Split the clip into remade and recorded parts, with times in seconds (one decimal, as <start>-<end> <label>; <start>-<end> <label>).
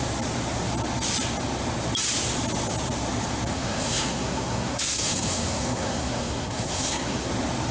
0.0-3.5 recorded; 3.5-7.3 remade; 7.3-7.7 recorded